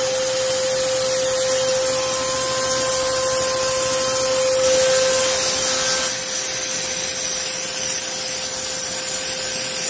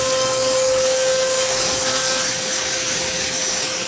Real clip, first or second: first